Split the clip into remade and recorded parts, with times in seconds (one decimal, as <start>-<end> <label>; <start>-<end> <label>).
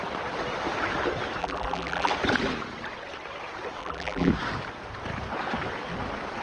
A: 0.0-1.4 recorded; 1.4-2.1 remade; 2.1-3.8 recorded; 3.8-4.3 remade; 4.3-6.4 recorded